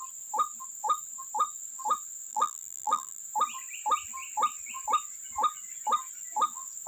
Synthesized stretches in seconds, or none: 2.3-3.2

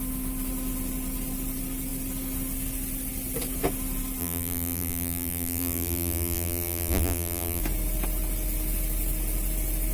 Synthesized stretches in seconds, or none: 4.2-7.6